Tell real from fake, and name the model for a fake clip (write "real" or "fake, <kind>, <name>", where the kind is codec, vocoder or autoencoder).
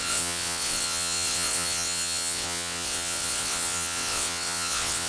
fake, vocoder, WaveNeXt